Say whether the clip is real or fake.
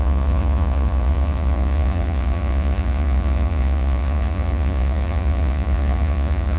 fake